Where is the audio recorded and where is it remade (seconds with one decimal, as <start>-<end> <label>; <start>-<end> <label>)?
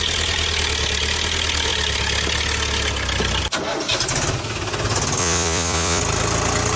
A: 0.0-5.2 recorded; 5.2-6.0 remade; 6.0-6.8 recorded